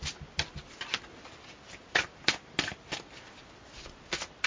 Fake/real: real